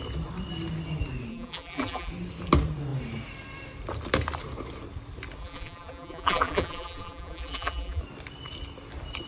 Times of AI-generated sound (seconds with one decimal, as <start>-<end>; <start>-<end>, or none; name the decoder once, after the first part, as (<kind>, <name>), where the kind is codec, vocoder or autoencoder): 1.3-2.1 (vocoder, BigVGAN v2); 5.4-8.0